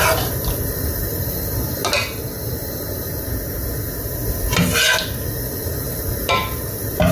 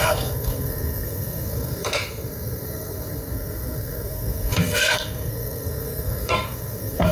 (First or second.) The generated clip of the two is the second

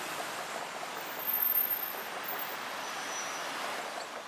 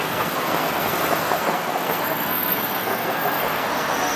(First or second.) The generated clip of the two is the second